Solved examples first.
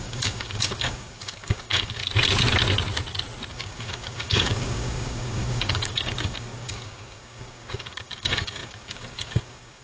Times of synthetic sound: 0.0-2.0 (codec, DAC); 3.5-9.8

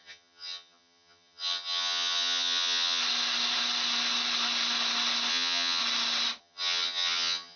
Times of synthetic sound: 0.0-3.0 (vocoder, HiFi-GAN); 5.3-5.8; 6.4-7.6

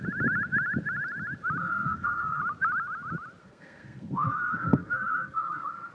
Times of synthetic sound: 1.6-2.4 (codec, SNAC); 3.4-5.9